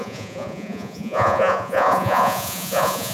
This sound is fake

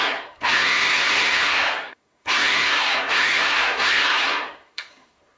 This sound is fake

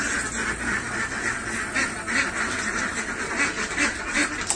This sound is real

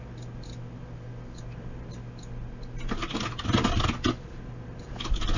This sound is real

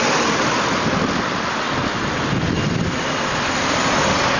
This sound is real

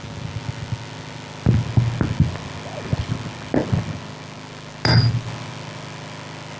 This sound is real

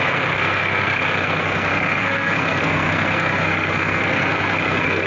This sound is fake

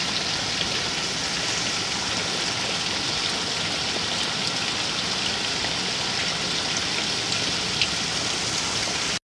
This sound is real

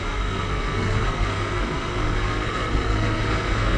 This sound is fake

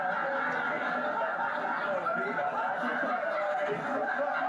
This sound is real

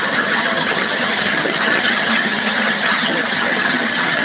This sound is fake